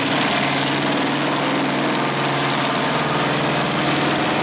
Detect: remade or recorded recorded